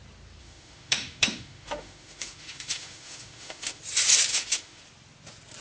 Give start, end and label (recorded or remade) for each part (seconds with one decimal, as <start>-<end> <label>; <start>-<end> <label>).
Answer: 0.0-0.4 recorded; 0.4-3.8 remade; 3.8-4.3 recorded; 4.3-4.8 remade; 4.8-5.6 recorded